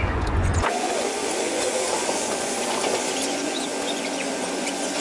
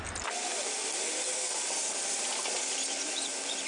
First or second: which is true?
second